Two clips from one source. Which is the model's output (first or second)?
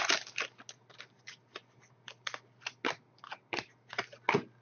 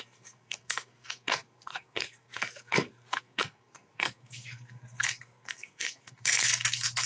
second